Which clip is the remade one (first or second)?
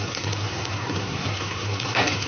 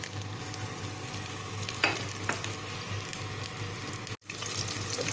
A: first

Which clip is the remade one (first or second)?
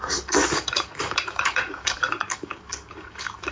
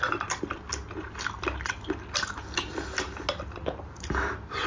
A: first